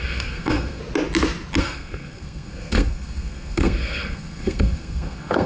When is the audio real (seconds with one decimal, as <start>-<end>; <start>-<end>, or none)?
0.8-1.6